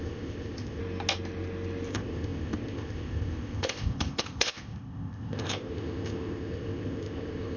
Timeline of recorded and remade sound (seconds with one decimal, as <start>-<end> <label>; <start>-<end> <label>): 0.0-0.8 remade; 0.8-1.9 recorded; 1.9-7.6 remade